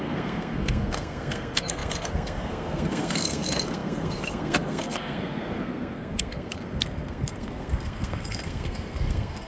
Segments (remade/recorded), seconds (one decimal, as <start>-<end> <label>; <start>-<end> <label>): 0.0-9.5 remade